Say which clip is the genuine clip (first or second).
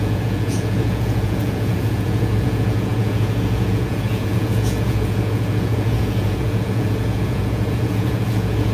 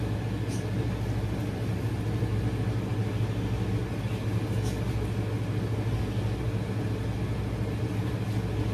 second